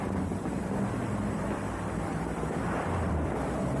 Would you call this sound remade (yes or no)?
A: yes